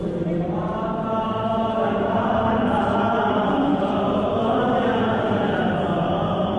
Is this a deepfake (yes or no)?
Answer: yes